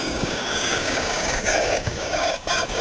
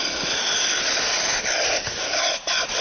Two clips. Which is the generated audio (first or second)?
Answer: first